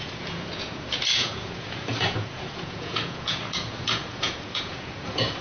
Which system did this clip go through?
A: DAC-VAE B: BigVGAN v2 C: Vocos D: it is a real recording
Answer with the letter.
C